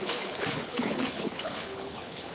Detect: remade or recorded remade